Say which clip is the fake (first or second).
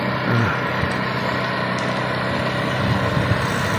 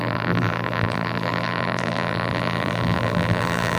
second